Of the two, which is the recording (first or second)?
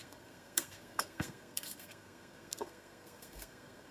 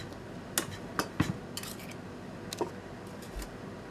second